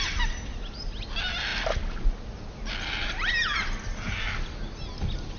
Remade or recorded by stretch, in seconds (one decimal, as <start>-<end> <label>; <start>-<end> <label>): 0.0-5.4 recorded